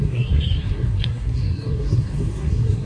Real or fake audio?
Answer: fake